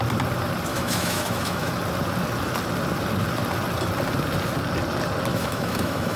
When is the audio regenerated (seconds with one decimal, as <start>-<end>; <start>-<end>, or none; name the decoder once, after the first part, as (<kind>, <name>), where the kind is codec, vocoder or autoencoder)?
0.7-1.7 (autoencoder, DAC-VAE); 5.3-6.2